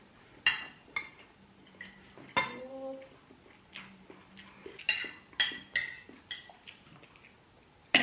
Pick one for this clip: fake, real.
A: real